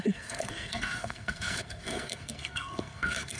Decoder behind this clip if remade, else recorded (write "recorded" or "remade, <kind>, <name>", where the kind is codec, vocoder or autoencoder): remade, codec, SNAC